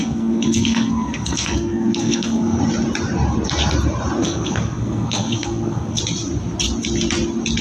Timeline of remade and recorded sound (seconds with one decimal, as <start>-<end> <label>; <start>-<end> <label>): 0.0-2.6 remade; 2.6-4.2 recorded; 4.2-6.0 remade; 6.0-7.6 recorded